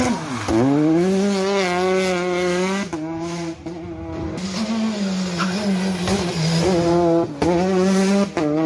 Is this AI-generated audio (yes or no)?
no